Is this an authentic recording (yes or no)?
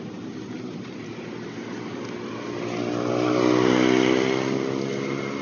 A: yes